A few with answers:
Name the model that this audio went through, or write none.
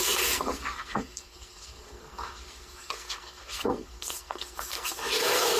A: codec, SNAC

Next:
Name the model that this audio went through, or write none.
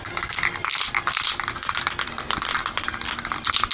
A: none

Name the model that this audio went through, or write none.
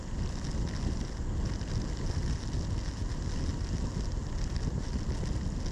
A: none